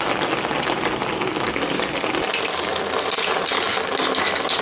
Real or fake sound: real